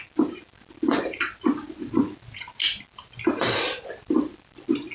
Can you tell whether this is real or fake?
real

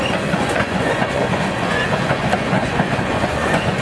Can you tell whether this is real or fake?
fake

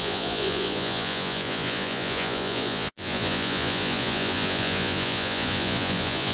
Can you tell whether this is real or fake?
fake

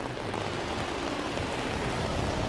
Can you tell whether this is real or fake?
real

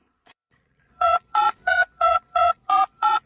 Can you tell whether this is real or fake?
fake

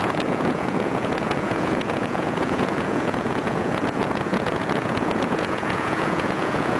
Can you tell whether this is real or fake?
fake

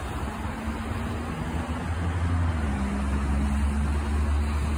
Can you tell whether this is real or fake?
real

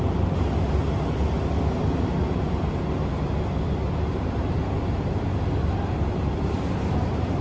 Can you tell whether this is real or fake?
real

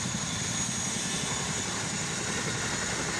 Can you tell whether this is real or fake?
real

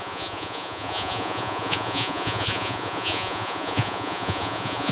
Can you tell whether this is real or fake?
fake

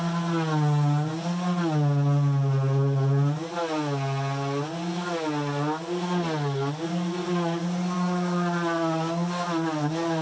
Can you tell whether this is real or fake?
real